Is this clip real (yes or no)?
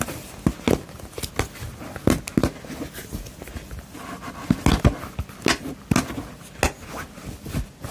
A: yes